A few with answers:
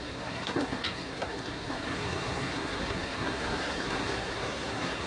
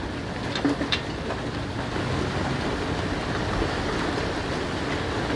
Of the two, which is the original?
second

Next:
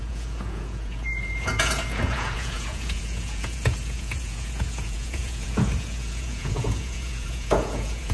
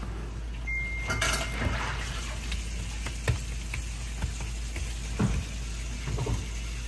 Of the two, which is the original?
second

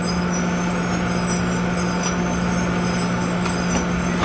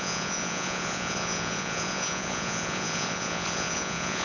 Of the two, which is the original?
first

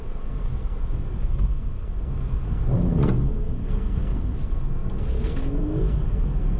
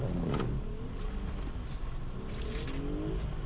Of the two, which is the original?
second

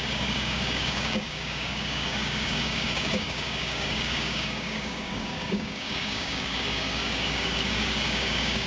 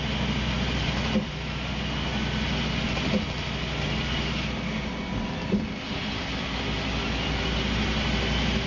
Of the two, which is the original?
second